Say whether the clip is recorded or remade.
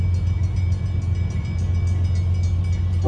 recorded